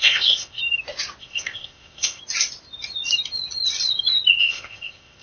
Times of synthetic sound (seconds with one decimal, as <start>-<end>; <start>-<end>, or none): 0.0-0.6; 1.2-2.2; 4.4-5.2